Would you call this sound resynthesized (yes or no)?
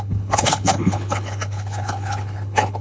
yes